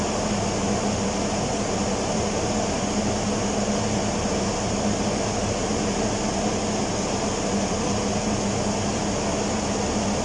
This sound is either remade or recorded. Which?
recorded